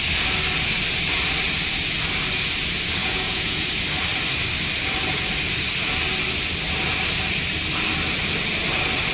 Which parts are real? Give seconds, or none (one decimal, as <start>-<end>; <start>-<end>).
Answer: 0.0-3.0; 3.7-9.1